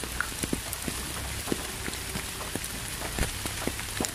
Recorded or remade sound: recorded